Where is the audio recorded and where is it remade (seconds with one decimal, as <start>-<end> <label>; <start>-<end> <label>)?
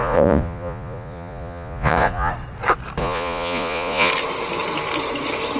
0.0-2.3 remade; 2.3-3.0 recorded; 3.0-4.1 remade; 4.1-5.6 recorded